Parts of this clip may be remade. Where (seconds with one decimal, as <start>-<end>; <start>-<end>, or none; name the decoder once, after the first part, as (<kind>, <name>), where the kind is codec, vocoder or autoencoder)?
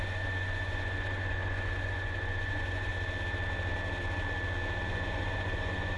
0.0-2.9 (vocoder, Vocos); 4.9-6.0